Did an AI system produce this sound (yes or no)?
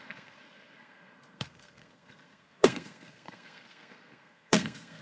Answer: yes